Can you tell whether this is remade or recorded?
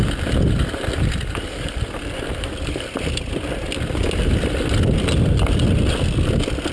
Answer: recorded